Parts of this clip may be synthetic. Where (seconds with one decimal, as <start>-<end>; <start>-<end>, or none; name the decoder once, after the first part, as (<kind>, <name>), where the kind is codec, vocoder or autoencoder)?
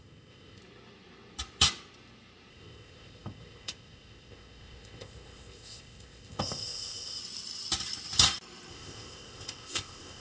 0.0-0.6 (codec, ZipCodec); 2.5-7.2; 8.7-10.2